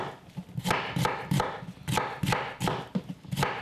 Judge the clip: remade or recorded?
recorded